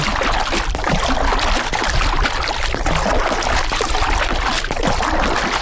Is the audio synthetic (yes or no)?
no